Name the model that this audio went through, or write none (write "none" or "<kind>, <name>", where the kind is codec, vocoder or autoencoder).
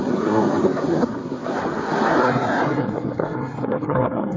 codec, SNAC